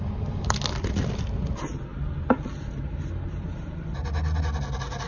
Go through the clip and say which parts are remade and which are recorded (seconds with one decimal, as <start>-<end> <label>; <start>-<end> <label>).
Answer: 0.0-5.1 recorded